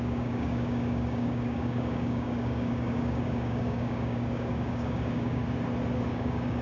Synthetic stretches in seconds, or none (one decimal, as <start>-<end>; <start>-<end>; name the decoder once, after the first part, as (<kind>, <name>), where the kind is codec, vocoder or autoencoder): 0.0-5.4 (codec, DAC); 6.0-6.6